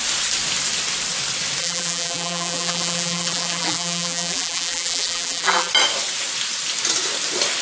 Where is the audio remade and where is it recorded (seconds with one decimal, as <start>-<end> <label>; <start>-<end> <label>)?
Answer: 0.0-1.6 recorded; 1.6-5.7 remade; 5.7-7.6 recorded